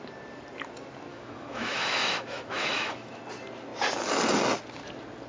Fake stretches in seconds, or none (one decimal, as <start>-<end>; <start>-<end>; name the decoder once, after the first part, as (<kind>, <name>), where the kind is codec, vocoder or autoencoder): 1.1-3.2 (autoencoder, DAC-VAE)